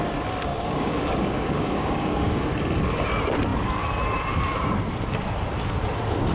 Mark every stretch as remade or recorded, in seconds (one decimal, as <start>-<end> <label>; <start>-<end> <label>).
0.0-0.5 recorded; 0.5-2.5 remade; 2.5-6.3 recorded